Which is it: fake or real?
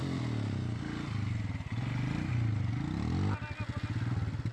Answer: real